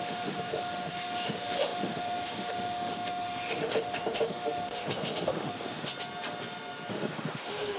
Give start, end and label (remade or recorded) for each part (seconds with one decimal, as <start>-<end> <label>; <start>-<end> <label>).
0.0-5.9 remade; 5.9-6.9 recorded; 6.9-7.8 remade